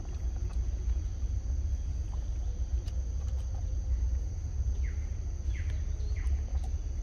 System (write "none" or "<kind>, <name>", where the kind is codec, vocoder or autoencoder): none